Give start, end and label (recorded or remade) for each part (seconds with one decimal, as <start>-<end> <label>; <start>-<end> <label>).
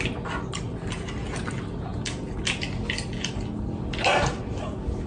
0.0-5.1 recorded